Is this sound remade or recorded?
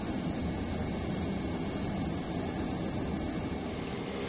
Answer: recorded